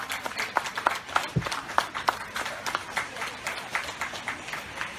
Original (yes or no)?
no